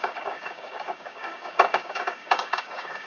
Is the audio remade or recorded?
remade